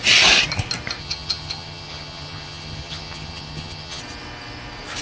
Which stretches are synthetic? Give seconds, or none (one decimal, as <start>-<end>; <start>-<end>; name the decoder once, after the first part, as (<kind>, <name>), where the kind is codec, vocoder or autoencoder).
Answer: 1.0-4.0 (vocoder, HiFi-GAN)